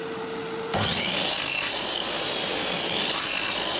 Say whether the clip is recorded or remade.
recorded